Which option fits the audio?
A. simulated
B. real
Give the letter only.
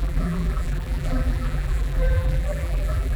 A